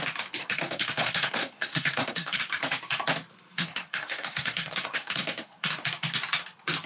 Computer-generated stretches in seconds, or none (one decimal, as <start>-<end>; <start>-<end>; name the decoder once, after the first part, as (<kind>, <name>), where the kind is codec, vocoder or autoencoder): 0.4-2.4 (codec, SNAC); 3.6-5.8